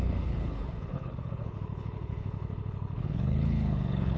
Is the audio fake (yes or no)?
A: yes